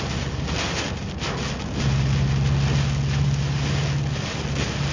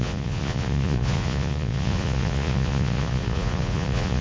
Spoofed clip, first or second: second